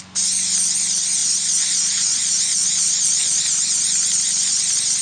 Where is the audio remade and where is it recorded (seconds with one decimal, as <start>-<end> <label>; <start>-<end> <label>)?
0.0-1.2 recorded; 1.2-3.4 remade; 3.4-5.0 recorded